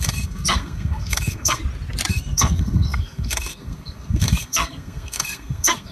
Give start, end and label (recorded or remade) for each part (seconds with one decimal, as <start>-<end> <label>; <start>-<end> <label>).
0.0-1.6 remade; 1.6-2.1 recorded; 2.1-5.9 remade